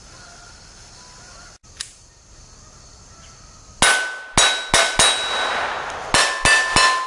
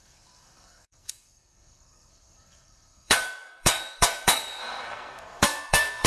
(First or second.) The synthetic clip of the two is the second